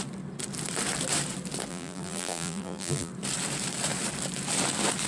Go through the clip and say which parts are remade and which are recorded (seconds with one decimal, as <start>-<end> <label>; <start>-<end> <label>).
0.0-1.7 recorded; 1.7-3.1 remade; 3.1-5.1 recorded